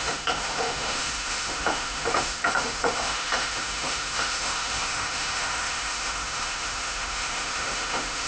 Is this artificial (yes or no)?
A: yes